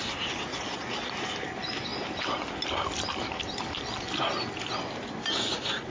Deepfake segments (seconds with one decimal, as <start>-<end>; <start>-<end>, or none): 0.5-1.1

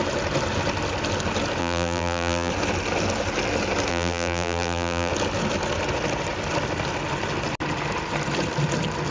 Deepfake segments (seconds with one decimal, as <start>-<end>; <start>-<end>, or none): 1.6-2.5; 3.9-5.1

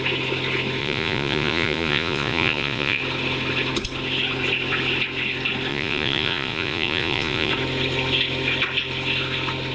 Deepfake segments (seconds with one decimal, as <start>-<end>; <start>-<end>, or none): 0.8-3.0; 5.7-7.5

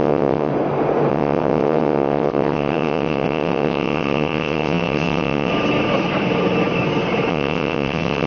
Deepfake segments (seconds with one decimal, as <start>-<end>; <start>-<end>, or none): 0.0-0.5; 1.1-5.5; 7.3-8.3

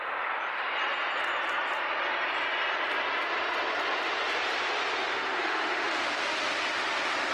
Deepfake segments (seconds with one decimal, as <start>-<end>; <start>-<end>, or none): 5.1-6.1

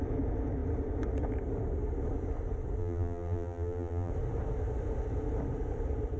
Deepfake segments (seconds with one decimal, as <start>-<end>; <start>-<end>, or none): 2.8-4.1